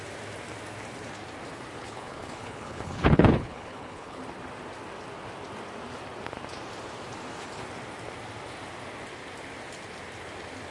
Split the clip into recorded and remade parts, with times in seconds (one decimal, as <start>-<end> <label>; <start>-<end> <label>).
0.0-1.8 recorded; 1.8-4.2 remade; 4.2-10.7 recorded